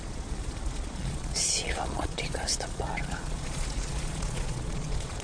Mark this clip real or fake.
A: fake